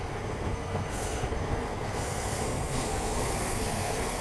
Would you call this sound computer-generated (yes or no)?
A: yes